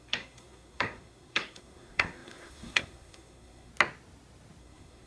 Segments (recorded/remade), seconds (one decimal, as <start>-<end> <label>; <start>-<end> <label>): 0.0-3.7 remade; 3.7-4.6 recorded; 4.6-5.1 remade